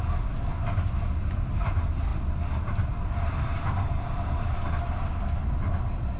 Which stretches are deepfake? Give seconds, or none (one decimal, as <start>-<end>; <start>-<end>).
none